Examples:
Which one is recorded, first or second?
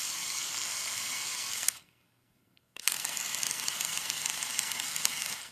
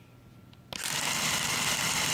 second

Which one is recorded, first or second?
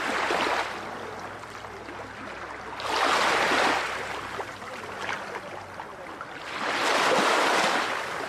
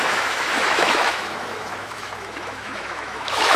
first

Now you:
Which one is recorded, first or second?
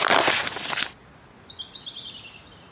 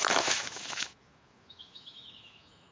first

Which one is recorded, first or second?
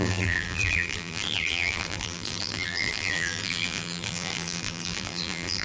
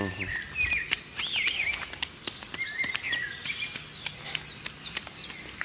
second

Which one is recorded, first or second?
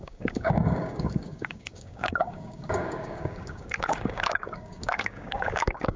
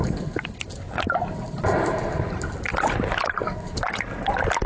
second